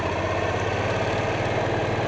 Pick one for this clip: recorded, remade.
recorded